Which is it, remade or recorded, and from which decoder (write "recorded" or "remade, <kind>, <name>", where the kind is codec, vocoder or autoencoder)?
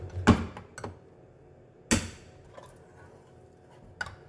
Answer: recorded